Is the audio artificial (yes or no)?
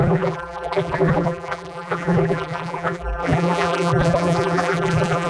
yes